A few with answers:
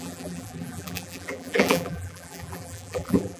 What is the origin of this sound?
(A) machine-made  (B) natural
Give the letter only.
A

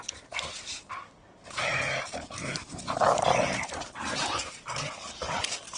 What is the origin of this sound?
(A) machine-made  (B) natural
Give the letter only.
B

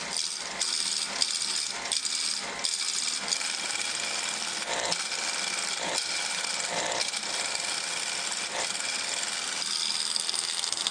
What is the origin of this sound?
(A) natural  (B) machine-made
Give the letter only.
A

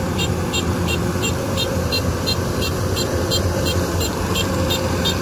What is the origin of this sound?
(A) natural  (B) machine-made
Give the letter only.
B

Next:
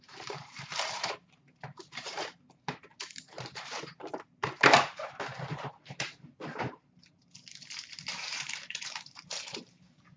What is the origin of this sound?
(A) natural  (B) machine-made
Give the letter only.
B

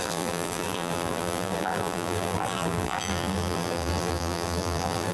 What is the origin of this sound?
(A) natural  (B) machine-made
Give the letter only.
B